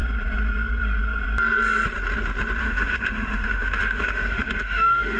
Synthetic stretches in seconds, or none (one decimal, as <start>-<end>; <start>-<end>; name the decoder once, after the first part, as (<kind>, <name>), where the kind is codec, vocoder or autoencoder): 2.6-5.2 (autoencoder, DAC-VAE)